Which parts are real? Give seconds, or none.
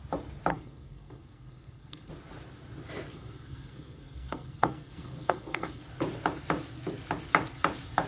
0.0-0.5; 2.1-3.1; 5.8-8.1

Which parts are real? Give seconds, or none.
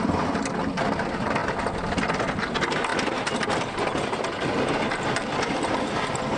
0.0-6.4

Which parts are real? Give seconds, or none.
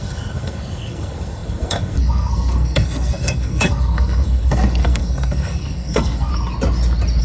6.3-7.2